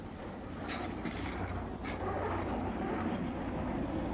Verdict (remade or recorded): recorded